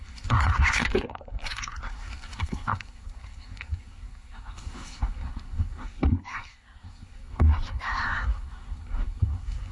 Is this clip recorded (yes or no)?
no